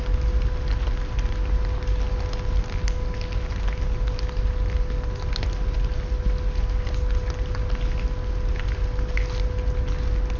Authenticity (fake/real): real